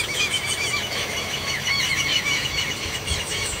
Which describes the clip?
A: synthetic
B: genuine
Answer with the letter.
A